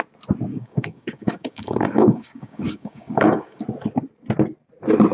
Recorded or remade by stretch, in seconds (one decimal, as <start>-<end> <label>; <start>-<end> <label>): 0.0-0.5 recorded; 0.5-3.6 remade; 3.6-5.1 recorded